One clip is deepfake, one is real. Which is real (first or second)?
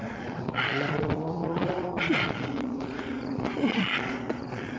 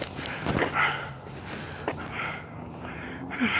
second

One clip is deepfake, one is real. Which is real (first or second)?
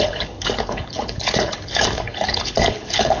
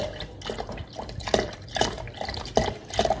second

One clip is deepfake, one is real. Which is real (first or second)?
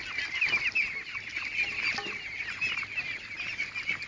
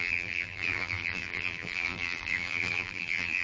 first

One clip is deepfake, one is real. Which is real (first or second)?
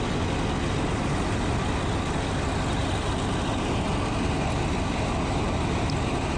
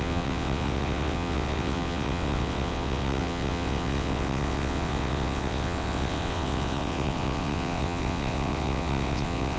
first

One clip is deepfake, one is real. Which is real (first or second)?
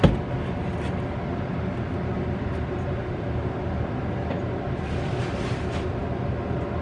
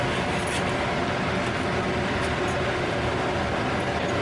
second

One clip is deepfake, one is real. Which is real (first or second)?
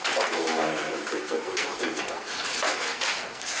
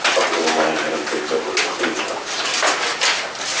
second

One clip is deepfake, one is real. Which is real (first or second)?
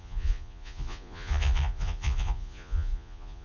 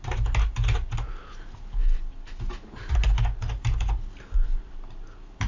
second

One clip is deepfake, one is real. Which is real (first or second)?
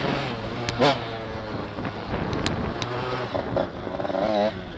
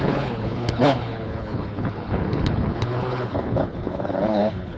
first